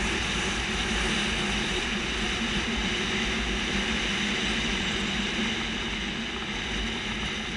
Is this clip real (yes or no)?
yes